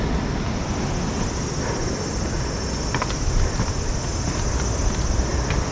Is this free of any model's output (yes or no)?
yes